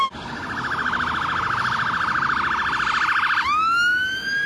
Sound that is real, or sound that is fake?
real